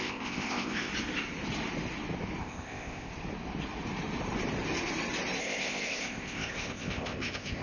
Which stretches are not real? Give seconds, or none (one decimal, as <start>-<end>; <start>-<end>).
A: 0.0-0.9; 2.4-3.1; 5.4-7.6